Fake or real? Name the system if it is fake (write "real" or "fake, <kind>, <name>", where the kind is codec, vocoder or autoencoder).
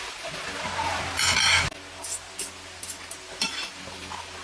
real